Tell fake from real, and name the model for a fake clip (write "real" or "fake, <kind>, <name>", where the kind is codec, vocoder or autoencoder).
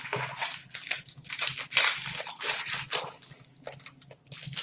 real